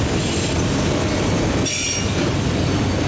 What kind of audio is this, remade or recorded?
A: recorded